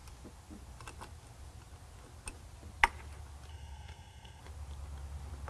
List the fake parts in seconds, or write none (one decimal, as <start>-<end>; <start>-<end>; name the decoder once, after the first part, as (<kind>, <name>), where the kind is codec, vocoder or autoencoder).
3.5-4.4 (codec, SNAC)